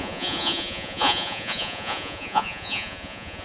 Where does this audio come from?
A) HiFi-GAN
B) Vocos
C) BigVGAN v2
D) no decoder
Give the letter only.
B